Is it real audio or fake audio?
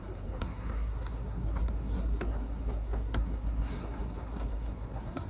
fake